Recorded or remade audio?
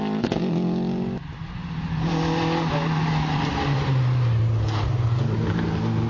recorded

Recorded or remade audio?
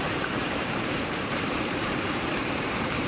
remade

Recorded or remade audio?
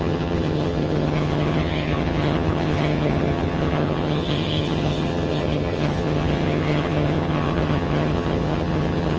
remade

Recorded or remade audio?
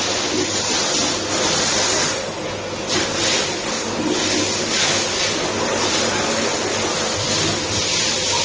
recorded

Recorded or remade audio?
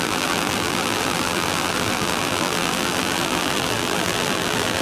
remade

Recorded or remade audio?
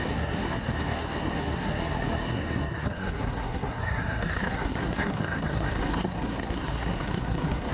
remade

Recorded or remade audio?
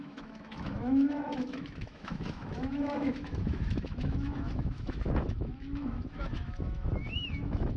remade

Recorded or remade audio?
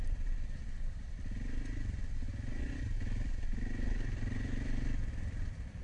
remade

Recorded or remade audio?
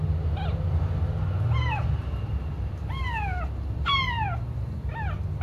recorded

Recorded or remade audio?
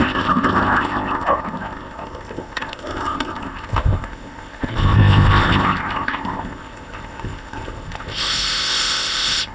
remade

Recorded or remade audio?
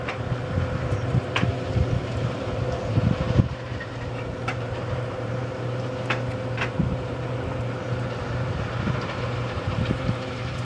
remade